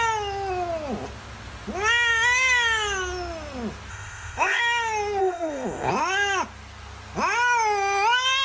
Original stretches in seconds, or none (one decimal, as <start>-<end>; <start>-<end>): 0.0-3.9; 4.6-5.2; 5.9-8.4